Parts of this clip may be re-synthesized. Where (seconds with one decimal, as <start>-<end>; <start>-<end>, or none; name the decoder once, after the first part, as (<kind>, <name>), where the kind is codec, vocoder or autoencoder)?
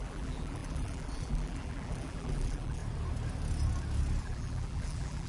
0.0-2.8 (vocoder, BigVGAN v2); 4.2-5.3